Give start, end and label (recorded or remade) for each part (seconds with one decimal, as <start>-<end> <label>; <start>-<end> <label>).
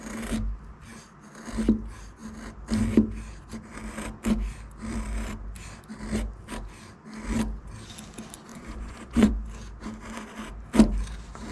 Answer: 0.0-8.5 recorded; 8.5-9.3 remade; 9.3-11.5 recorded